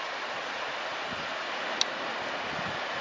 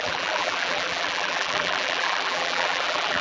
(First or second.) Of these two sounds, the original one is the first